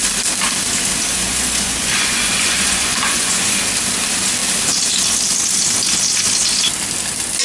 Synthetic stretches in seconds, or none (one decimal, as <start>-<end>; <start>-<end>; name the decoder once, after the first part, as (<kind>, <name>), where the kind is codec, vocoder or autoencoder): 1.1-3.6 (vocoder, Vocos)